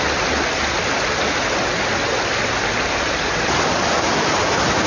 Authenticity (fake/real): real